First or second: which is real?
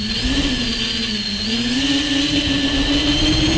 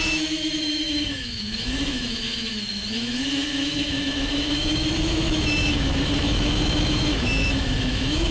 first